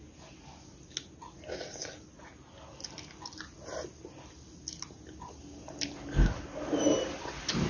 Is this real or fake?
real